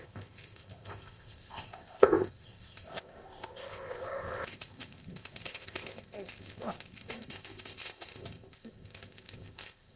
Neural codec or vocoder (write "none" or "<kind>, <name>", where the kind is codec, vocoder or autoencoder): codec, ZipCodec